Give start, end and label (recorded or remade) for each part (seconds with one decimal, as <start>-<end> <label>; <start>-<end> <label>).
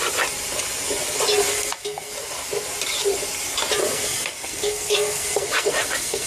0.0-1.5 recorded; 1.5-2.1 remade; 2.1-3.8 recorded; 3.8-6.3 remade